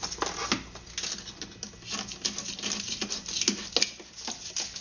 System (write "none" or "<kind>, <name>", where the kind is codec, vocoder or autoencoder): none